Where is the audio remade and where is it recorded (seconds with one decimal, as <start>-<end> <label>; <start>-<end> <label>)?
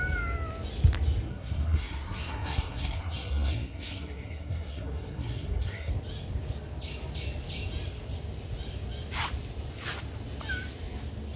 0.0-1.3 recorded; 1.3-5.9 remade; 5.9-11.4 recorded